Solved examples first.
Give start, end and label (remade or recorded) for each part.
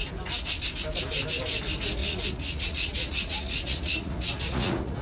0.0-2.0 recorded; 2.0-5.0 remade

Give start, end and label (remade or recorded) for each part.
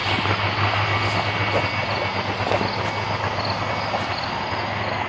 0.0-5.1 recorded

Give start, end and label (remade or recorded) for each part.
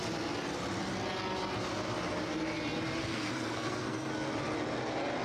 0.0-3.0 recorded; 3.0-4.1 remade; 4.1-5.2 recorded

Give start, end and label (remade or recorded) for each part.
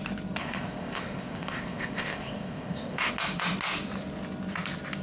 0.0-0.4 recorded; 0.4-3.1 remade; 3.1-5.0 recorded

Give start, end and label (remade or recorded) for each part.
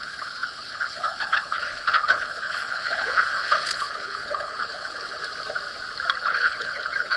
0.0-5.2 remade; 5.2-6.2 recorded; 6.2-7.2 remade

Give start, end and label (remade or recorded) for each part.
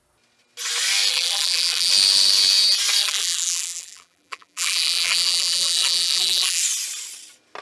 0.0-1.1 recorded; 1.1-1.9 remade; 1.9-3.0 recorded; 3.0-6.6 remade; 6.6-7.6 recorded